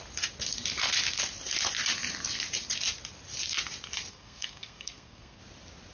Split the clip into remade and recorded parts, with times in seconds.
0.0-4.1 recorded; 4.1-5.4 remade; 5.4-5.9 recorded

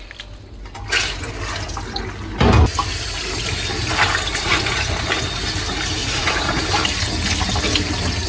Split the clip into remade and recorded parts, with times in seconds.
0.0-4.3 recorded; 4.3-5.1 remade; 5.1-6.0 recorded; 6.0-6.6 remade; 6.6-8.3 recorded

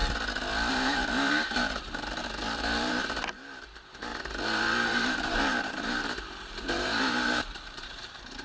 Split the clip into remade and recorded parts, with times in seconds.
0.0-0.7 recorded; 0.7-8.4 remade

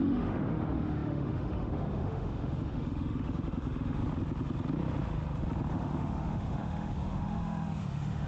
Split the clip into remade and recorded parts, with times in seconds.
0.0-4.0 remade; 4.0-5.7 recorded; 5.7-8.3 remade

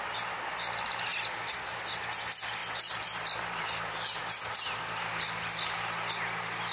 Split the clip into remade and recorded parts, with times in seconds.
0.0-1.1 recorded; 1.1-1.6 remade; 1.6-2.6 recorded; 2.6-3.6 remade; 3.6-4.2 recorded; 4.2-4.8 remade; 4.8-6.7 recorded

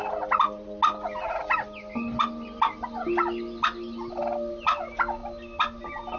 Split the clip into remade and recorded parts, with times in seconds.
0.0-6.2 recorded

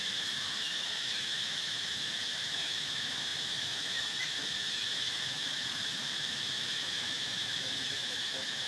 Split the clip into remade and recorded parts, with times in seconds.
0.0-8.7 remade

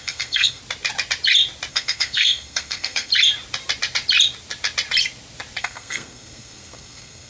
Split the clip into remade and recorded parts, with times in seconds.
0.0-0.6 remade; 0.6-1.7 recorded; 1.7-3.1 remade; 3.1-5.6 recorded; 5.6-7.3 remade